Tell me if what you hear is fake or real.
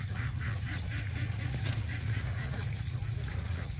fake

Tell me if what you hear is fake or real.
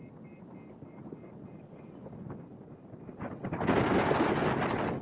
real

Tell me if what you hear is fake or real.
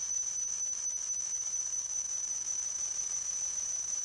real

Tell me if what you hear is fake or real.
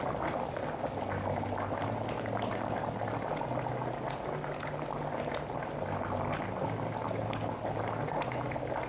real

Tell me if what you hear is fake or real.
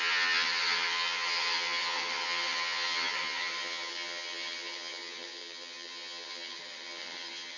fake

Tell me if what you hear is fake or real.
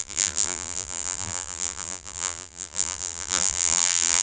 fake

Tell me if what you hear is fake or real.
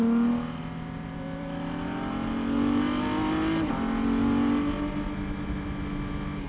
real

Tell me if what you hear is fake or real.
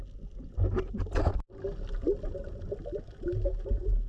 real